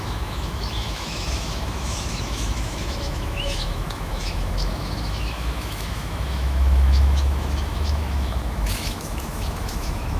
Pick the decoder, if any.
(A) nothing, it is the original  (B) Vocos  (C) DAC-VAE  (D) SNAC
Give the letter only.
C